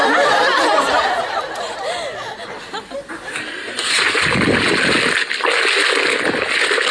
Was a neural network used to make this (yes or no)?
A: no